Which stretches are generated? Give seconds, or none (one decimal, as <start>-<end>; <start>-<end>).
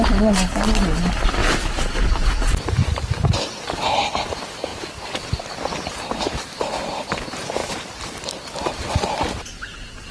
none